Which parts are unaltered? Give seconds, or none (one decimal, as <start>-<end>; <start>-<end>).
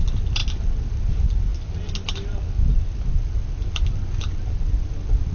0.0-5.3